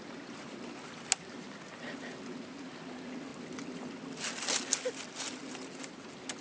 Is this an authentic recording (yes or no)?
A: yes